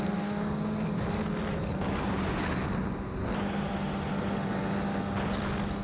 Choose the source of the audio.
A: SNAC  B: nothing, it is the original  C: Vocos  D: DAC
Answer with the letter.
B